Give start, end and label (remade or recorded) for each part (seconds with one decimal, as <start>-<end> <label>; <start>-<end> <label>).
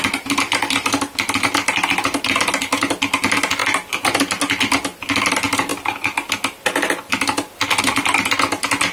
0.0-8.9 recorded